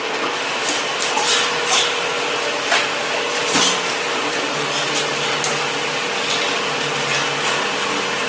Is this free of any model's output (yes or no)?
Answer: yes